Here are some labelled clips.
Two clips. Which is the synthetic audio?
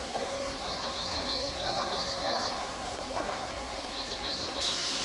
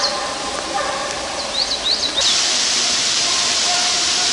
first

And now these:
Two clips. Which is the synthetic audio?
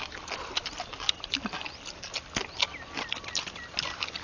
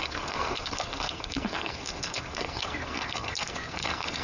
second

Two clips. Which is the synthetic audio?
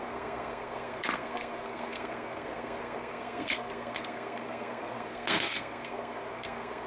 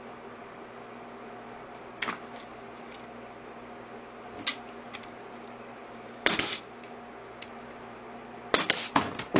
first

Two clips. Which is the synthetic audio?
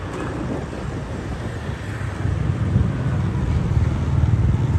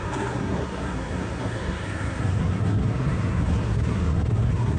second